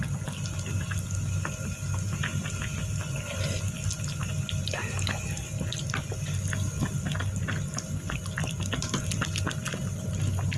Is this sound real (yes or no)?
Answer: yes